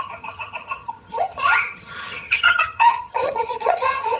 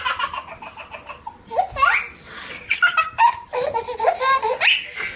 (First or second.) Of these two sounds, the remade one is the first